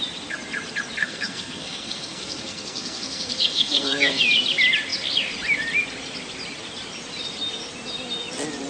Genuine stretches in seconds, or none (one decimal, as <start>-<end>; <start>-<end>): 0.0-1.0; 4.2-8.7